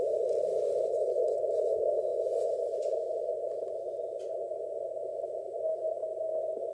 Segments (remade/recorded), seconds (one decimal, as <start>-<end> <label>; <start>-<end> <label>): 0.0-6.7 recorded